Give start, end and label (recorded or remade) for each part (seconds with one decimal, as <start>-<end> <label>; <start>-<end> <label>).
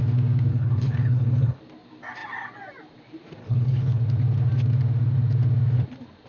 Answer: 0.0-0.5 recorded; 0.5-1.6 remade; 1.6-3.4 recorded; 3.4-4.0 remade; 4.0-6.3 recorded